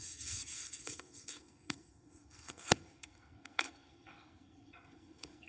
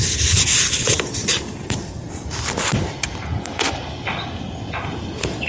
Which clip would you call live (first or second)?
second